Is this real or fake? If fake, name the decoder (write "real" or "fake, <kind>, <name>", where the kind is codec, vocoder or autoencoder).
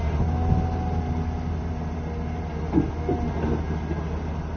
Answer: real